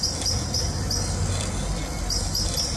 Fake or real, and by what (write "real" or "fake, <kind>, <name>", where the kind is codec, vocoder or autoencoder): real